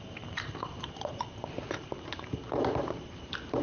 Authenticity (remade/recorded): remade